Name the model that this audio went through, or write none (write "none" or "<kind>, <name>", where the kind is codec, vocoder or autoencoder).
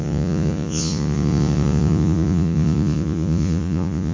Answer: vocoder, Vocos